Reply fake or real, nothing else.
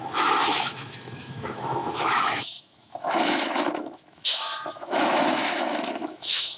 fake